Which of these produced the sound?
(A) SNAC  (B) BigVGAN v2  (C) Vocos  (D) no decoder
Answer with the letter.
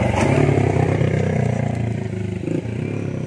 D